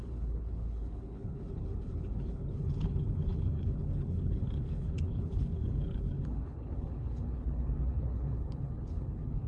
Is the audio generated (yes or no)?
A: yes